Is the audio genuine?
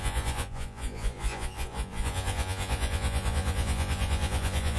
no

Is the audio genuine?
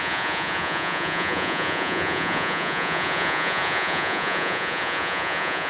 no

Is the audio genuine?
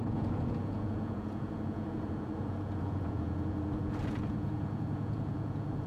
no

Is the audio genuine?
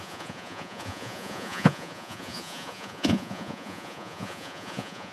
no